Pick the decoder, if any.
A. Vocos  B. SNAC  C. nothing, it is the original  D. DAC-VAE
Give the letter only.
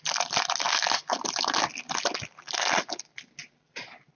C